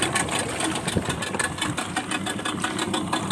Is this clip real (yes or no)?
yes